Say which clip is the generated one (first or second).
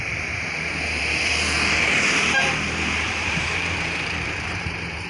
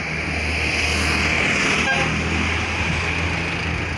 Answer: first